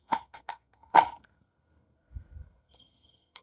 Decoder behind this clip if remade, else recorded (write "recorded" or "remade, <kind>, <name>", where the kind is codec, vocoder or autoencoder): remade, codec, SNAC